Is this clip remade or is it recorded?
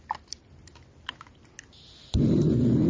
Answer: recorded